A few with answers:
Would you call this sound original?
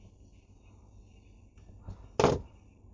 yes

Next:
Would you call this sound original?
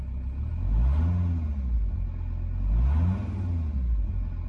yes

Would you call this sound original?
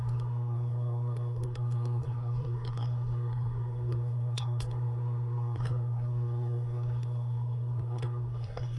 no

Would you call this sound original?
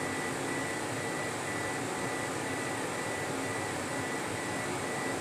yes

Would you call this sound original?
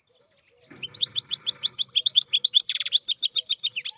no